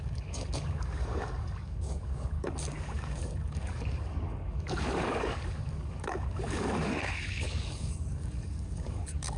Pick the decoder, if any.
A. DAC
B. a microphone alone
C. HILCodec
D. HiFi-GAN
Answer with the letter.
A